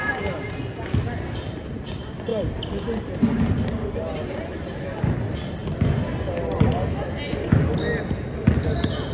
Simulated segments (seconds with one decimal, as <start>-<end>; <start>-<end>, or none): none